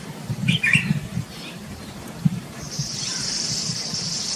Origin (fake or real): fake